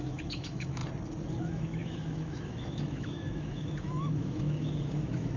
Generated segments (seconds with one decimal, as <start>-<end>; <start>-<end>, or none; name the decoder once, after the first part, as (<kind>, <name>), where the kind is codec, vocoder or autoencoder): 0.0-0.8 (autoencoder, DAC-VAE); 1.4-5.4